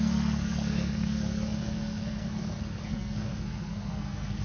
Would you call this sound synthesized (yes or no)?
yes